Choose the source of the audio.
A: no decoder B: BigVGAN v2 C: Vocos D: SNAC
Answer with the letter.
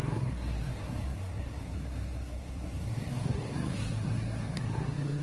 D